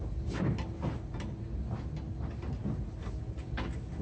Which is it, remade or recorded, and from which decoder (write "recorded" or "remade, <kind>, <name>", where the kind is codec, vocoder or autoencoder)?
recorded